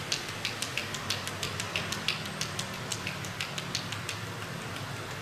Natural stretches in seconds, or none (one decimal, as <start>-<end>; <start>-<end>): 0.0-5.2